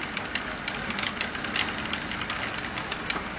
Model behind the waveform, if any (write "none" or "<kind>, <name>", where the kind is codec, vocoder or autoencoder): none